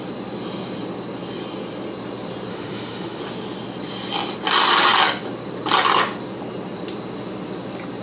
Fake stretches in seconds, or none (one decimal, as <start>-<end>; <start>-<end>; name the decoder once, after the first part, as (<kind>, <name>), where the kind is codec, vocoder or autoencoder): 2.5-3.2 (autoencoder, DAC-VAE)